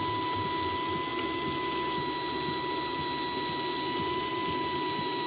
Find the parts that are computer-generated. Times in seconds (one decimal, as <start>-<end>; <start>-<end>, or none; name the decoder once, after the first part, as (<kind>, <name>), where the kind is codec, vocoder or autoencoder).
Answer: none